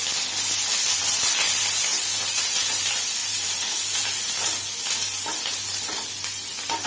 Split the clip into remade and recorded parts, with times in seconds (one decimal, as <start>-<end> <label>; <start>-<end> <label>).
0.0-1.9 recorded; 1.9-2.7 remade; 2.7-3.2 recorded; 3.2-4.3 remade; 4.3-6.9 recorded